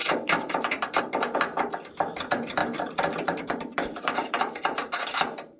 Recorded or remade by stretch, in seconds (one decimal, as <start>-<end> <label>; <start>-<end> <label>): 0.0-1.0 remade; 1.0-2.6 recorded; 2.6-5.6 remade

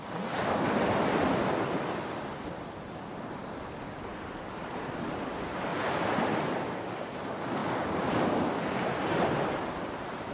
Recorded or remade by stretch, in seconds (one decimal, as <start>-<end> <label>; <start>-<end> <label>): 0.0-4.1 recorded; 4.1-5.1 remade; 5.1-5.7 recorded; 5.7-6.7 remade; 6.7-10.3 recorded